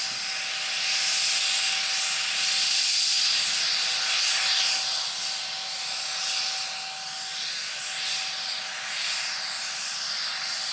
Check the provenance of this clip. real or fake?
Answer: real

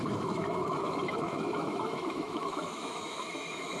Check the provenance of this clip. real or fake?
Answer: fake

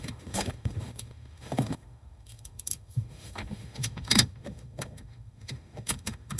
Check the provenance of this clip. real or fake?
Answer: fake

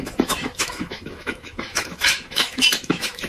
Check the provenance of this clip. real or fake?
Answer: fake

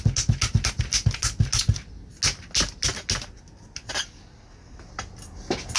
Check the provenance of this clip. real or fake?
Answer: real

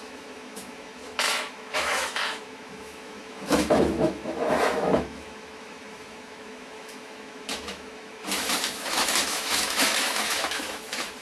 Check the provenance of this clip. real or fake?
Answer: fake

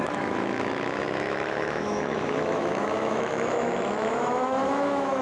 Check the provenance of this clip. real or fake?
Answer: fake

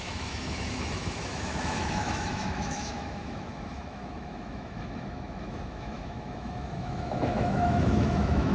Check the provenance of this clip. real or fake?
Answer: fake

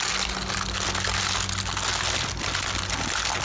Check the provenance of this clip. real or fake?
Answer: real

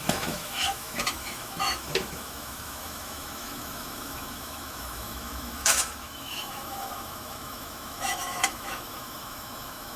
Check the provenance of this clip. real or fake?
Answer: fake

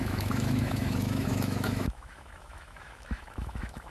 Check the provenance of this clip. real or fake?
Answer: fake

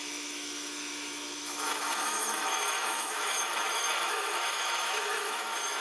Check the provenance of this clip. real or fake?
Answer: fake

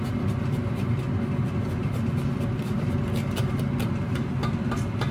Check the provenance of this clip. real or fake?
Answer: real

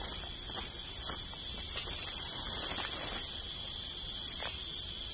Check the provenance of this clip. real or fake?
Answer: real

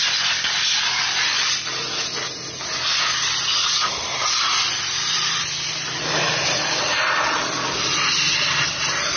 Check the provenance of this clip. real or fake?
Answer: real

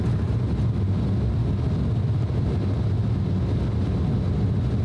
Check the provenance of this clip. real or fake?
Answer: real